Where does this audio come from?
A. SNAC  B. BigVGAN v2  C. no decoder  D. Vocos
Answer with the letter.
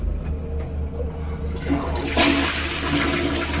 C